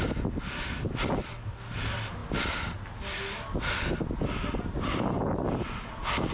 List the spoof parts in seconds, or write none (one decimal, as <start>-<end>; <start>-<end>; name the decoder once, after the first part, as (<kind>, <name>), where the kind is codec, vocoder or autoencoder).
none